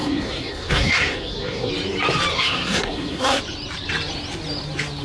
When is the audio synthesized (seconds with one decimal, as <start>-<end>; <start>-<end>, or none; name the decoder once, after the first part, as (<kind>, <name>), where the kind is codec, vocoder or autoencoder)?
0.0-1.7 (codec, SNAC); 2.3-3.4